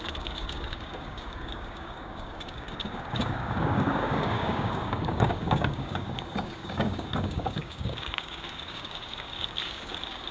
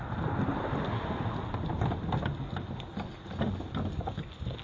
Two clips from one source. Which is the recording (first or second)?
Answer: second